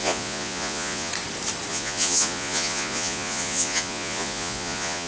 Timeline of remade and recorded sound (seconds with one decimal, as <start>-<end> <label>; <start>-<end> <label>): 0.0-1.1 remade; 1.1-1.7 recorded; 1.7-5.1 remade